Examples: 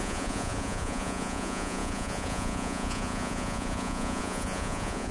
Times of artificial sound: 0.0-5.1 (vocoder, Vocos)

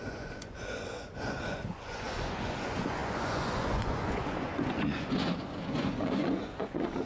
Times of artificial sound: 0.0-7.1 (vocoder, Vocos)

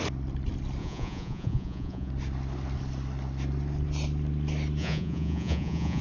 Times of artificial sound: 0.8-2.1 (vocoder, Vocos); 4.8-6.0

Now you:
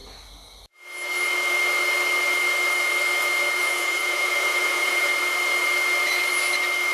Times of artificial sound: 3.6-5.1 (vocoder, Vocos)